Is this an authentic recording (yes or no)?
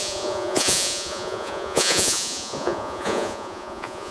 no